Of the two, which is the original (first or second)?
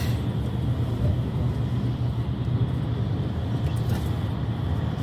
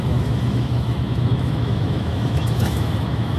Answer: first